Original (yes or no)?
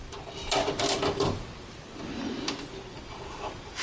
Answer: yes